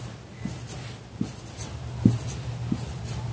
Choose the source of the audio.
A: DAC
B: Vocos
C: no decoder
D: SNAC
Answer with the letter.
C